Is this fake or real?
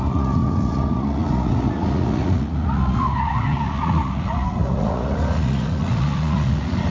fake